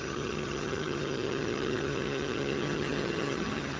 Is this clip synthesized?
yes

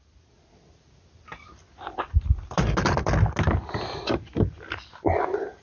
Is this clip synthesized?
no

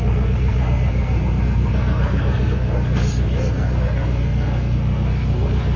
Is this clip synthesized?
yes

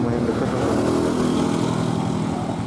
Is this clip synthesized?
no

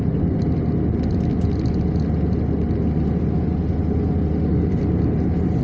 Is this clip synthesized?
no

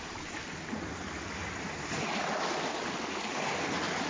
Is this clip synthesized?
no